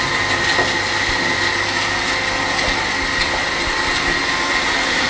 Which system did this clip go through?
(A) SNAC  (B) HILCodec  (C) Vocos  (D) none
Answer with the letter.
D